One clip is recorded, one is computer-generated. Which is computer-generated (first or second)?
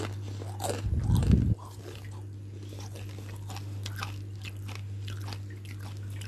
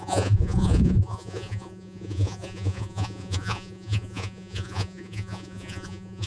second